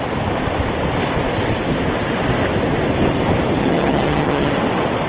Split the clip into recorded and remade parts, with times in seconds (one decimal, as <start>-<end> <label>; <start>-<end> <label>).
0.0-3.6 recorded; 3.6-4.5 remade; 4.5-5.1 recorded